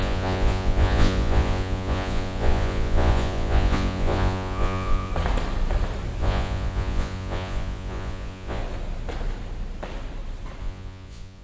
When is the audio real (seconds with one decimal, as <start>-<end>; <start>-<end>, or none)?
5.1-6.2; 8.6-10.6